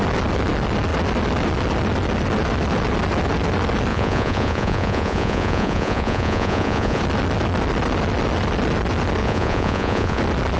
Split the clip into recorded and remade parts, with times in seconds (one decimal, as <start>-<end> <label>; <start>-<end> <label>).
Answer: 0.0-3.9 recorded; 3.9-7.0 remade; 7.0-9.2 recorded; 9.2-10.2 remade; 10.2-10.6 recorded